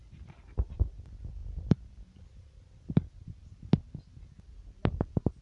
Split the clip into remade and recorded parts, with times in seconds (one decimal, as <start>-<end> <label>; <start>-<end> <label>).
0.0-5.4 recorded

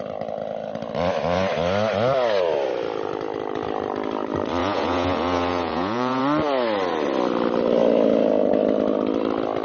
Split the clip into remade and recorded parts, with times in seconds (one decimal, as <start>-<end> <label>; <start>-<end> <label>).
0.0-4.6 recorded; 4.6-6.2 remade; 6.2-9.6 recorded

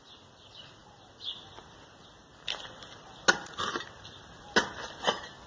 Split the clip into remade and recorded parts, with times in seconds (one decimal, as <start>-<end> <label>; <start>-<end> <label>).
0.0-5.5 recorded

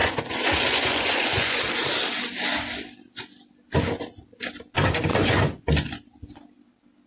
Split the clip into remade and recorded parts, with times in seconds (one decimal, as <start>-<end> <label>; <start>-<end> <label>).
0.0-1.6 remade; 1.6-5.1 recorded; 5.1-5.7 remade; 5.7-7.1 recorded

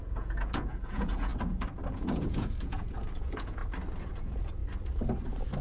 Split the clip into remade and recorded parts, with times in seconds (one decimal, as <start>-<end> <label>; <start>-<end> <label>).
0.0-1.3 remade; 1.3-1.9 recorded; 1.9-3.6 remade; 3.6-4.1 recorded; 4.1-4.6 remade; 4.6-5.6 recorded

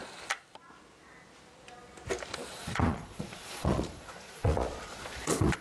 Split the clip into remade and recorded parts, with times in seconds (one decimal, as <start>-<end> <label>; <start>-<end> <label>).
0.0-2.5 recorded; 2.5-5.6 remade